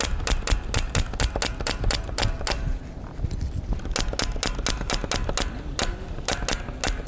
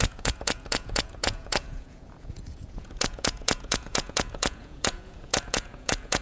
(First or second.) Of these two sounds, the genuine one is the first